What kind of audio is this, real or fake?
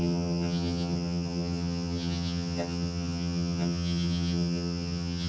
fake